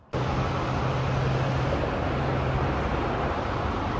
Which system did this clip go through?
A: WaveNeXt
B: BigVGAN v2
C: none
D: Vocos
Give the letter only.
C